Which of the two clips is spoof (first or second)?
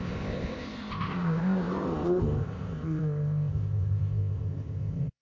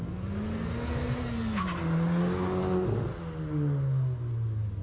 first